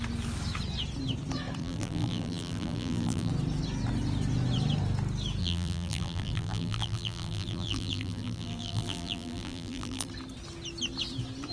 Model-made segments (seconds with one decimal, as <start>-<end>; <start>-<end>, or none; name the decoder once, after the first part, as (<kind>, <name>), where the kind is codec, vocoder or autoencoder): 1.6-3.3 (vocoder, BigVGAN v2); 5.4-10.1